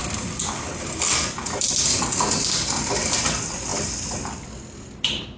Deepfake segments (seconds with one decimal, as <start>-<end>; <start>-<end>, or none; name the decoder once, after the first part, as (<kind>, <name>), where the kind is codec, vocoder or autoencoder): none

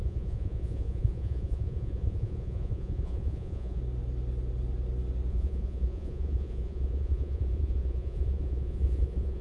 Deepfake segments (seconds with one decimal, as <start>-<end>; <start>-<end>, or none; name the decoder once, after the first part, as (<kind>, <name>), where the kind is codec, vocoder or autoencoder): 0.0-3.8 (vocoder, Vocos); 5.3-9.4

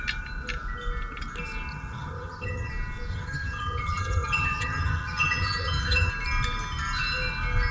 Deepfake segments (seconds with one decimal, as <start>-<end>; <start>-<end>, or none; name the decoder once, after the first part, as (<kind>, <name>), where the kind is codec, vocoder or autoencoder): 1.7-2.7 (vocoder, HiFi-GAN); 3.1-6.1